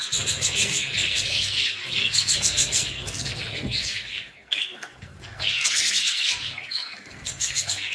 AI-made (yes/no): yes